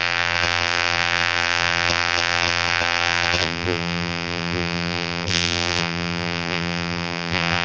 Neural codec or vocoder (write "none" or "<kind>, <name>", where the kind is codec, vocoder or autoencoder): vocoder, BigVGAN v2